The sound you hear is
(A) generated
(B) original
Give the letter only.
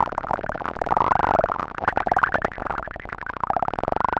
B